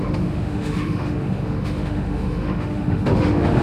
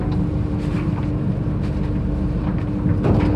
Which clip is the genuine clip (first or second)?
second